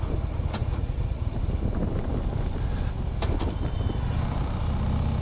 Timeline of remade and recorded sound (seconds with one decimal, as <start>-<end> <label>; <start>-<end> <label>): 0.0-0.6 recorded; 0.6-1.3 remade; 1.3-5.2 recorded